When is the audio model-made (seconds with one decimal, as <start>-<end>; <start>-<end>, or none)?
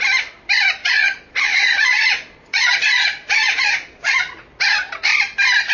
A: 0.8-4.2